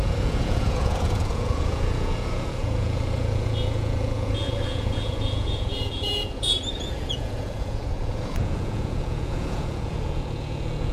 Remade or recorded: remade